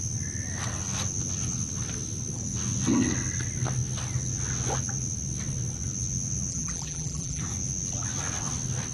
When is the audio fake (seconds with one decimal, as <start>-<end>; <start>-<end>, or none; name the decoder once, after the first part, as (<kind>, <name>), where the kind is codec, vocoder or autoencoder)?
6.5-7.4 (vocoder, BigVGAN v2)